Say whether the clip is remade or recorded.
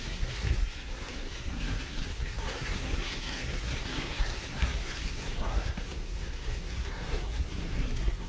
remade